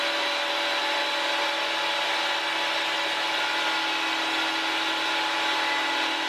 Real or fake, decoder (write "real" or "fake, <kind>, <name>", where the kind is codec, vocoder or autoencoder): real